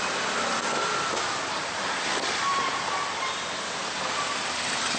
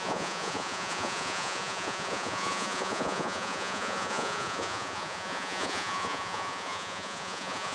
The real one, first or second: first